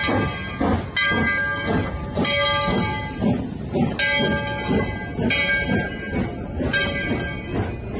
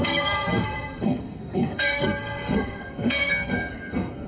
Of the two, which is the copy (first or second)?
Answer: second